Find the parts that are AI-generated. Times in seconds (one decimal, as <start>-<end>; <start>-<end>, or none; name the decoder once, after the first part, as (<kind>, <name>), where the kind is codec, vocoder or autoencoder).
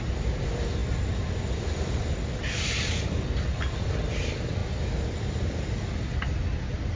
none